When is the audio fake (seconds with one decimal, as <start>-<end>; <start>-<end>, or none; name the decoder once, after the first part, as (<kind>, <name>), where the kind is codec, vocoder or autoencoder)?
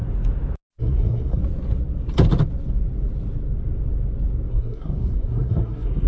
0.8-1.4 (codec, SNAC); 4.5-6.1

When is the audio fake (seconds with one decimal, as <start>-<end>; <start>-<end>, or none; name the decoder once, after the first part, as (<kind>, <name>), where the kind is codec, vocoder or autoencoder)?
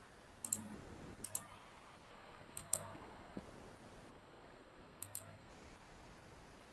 2.1-3.4 (codec, SNAC); 4.1-5.5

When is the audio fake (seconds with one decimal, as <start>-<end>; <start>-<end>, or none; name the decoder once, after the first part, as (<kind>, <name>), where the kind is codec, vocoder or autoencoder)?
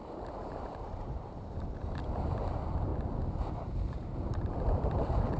0.0-2.9 (vocoder, BigVGAN v2); 3.5-5.4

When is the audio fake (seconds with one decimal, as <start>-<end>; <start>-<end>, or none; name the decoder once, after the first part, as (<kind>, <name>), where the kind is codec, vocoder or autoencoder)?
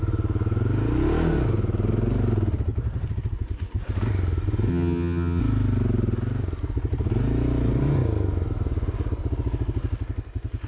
4.7-5.4 (vocoder, HiFi-GAN)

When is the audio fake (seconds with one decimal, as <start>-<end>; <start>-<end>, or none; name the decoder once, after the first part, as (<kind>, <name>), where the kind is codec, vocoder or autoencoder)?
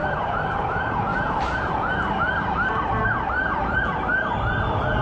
0.0-3.9 (vocoder, BigVGAN v2)